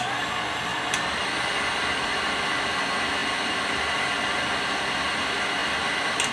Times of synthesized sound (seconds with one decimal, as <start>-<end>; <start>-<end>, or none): none